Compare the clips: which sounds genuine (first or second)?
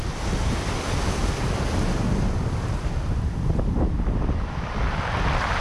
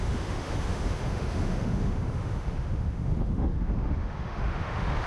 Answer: first